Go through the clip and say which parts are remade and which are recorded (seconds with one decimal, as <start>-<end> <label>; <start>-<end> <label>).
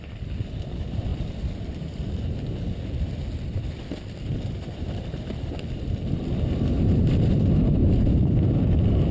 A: 0.0-7.8 remade; 7.8-9.1 recorded